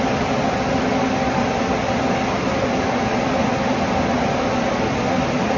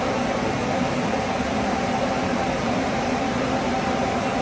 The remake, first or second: second